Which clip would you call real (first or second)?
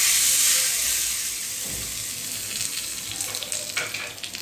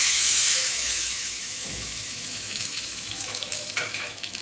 first